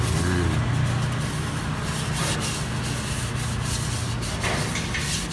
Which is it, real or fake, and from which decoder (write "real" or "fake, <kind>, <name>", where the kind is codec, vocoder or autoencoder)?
real